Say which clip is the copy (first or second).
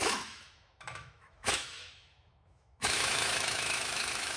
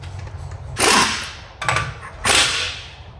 first